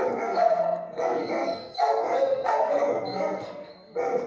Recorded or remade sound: remade